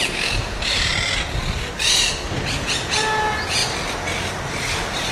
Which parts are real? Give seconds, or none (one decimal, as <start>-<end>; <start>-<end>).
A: 0.9-2.6; 3.6-5.1